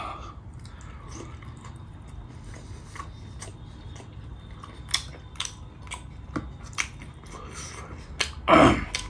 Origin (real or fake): real